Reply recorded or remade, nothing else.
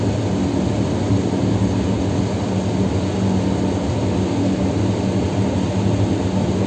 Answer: recorded